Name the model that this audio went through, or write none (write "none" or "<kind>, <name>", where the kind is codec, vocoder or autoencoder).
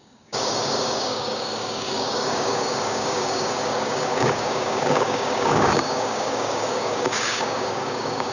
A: codec, DAC